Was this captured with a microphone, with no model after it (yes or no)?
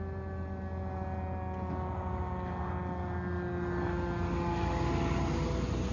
yes